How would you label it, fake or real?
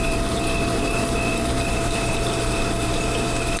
fake